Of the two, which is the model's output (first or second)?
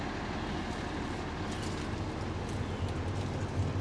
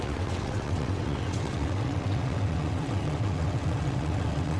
second